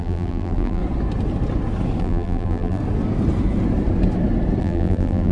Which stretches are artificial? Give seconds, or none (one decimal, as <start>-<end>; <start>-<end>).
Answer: 0.0-0.8; 2.0-2.8; 4.6-5.3